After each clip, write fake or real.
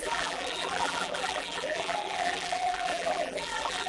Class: fake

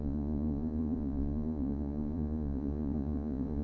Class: fake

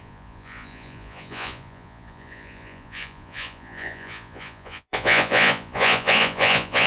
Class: fake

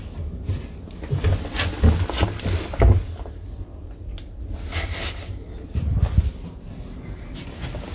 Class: real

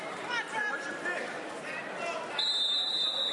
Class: real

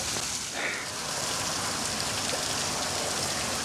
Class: real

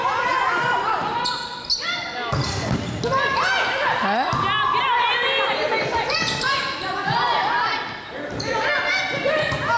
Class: real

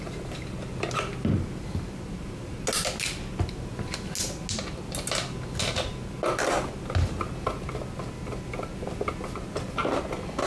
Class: real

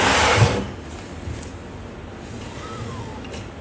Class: real